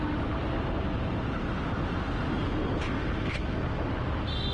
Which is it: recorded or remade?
recorded